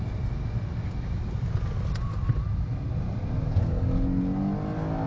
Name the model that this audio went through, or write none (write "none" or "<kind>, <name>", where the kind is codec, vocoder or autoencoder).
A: none